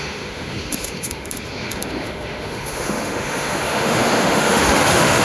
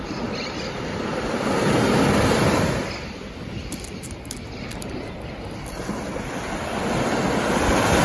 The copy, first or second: first